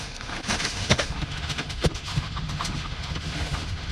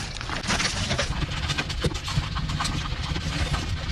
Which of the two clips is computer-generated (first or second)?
first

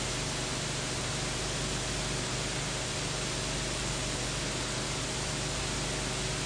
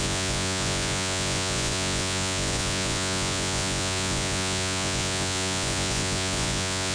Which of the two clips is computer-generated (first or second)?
second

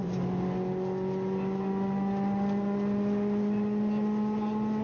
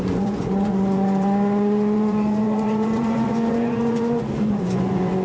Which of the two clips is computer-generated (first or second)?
second